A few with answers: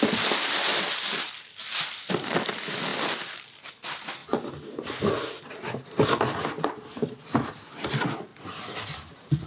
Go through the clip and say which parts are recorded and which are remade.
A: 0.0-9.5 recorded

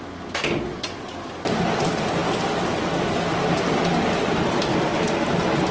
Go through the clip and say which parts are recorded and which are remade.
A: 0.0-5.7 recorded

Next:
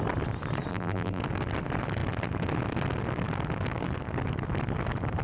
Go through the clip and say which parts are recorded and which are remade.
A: 0.0-0.7 recorded; 0.7-1.2 remade; 1.2-5.2 recorded

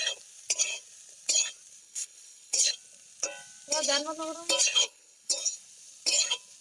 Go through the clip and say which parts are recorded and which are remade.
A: 0.0-1.8 recorded; 1.8-2.7 remade; 2.7-4.8 recorded; 4.8-5.3 remade; 5.3-6.6 recorded

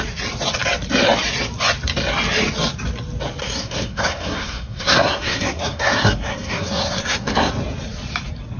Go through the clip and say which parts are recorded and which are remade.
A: 0.0-3.4 recorded; 3.4-7.5 remade; 7.5-8.6 recorded